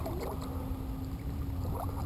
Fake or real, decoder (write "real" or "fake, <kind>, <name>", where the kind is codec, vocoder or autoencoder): real